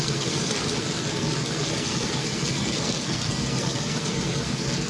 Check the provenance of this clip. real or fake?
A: fake